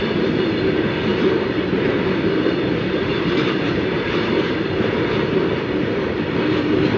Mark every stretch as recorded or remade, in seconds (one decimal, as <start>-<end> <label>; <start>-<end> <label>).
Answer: 0.0-1.1 recorded; 1.1-4.4 remade; 4.4-7.0 recorded